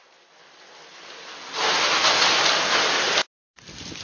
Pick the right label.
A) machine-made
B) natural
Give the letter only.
B